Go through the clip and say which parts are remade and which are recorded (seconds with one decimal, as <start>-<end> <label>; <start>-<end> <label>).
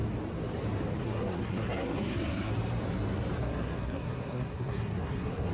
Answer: 0.0-1.0 recorded; 1.0-2.5 remade; 2.5-3.4 recorded; 3.4-5.5 remade